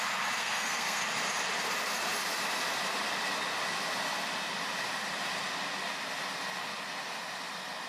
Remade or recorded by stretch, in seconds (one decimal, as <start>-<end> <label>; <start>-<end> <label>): 0.0-0.4 recorded; 0.4-1.0 remade; 1.0-7.9 recorded